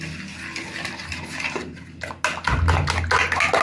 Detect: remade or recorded recorded